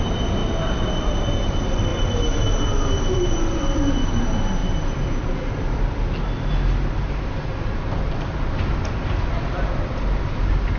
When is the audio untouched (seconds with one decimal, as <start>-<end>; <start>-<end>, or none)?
0.0-1.9; 4.0-4.6; 5.8-10.8